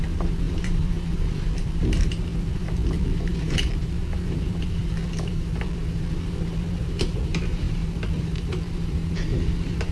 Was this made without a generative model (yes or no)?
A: no